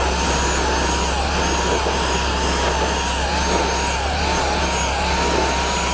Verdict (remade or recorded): recorded